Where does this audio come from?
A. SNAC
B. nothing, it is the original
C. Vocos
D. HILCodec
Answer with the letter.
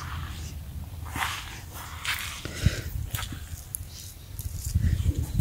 B